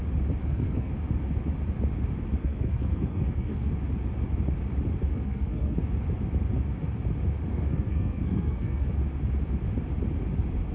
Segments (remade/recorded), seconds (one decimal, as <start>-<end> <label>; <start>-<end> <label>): 0.0-0.4 recorded; 0.4-0.9 remade; 0.9-2.4 recorded; 2.4-3.7 remade; 3.7-5.1 recorded; 5.1-5.8 remade; 5.8-7.5 recorded; 7.5-8.9 remade; 8.9-10.7 recorded